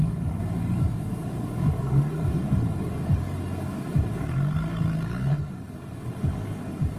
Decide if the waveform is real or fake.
fake